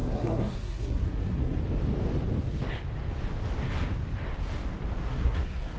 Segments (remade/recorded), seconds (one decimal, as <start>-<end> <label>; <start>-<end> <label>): 0.0-1.6 remade; 1.6-5.1 recorded; 5.1-5.8 remade